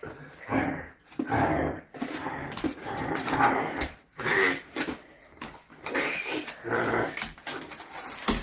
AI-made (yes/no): yes